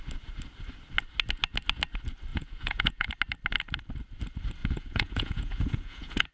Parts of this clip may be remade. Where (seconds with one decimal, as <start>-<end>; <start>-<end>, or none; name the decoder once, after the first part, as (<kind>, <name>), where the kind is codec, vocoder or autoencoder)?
2.3-3.1 (vocoder, Vocos); 4.6-6.3